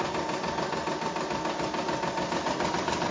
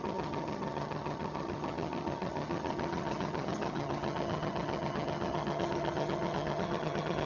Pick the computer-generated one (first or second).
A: second